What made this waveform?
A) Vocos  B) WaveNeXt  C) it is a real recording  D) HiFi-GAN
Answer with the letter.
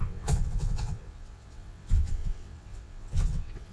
B